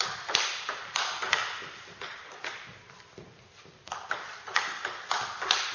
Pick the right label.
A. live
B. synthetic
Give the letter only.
B